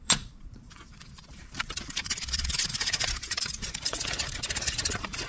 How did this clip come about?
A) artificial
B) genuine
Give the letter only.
A